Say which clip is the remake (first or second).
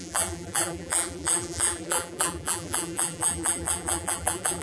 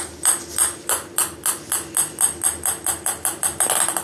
first